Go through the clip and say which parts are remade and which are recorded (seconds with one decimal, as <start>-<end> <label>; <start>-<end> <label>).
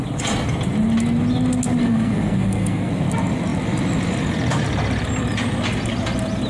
0.0-1.8 recorded; 1.8-2.9 remade; 2.9-6.5 recorded